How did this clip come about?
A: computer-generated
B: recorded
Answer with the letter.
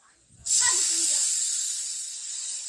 B